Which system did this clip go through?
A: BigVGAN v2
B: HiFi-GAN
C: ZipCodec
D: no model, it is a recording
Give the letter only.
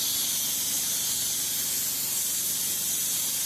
D